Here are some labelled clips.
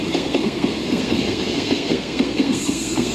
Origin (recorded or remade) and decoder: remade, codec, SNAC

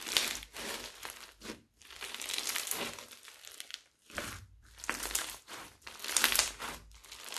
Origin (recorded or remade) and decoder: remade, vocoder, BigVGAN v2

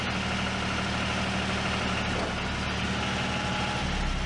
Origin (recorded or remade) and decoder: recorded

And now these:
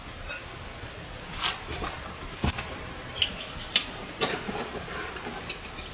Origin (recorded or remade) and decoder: recorded